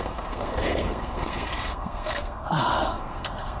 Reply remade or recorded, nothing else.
remade